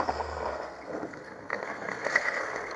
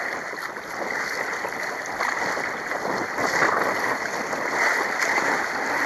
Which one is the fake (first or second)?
first